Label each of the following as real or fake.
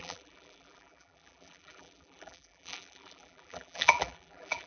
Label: fake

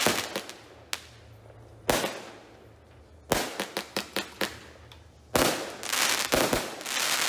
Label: real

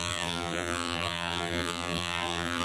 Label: fake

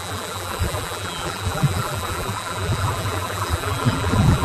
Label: fake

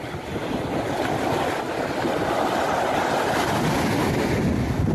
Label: real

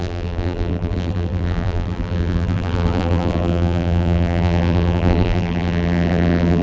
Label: fake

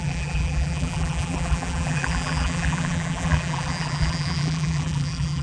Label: fake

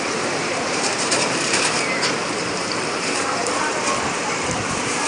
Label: fake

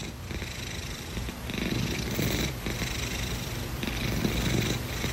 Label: fake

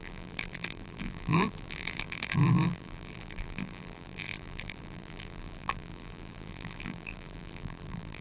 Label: fake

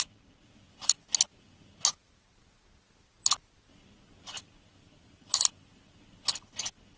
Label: real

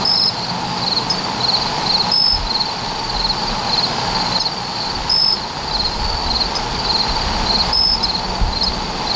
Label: real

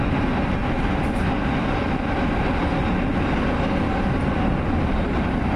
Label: real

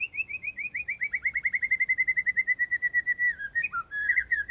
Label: fake